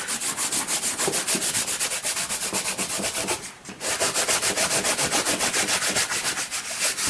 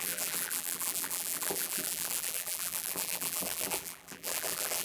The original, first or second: first